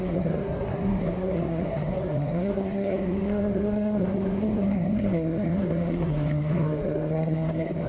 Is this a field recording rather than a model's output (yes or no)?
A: no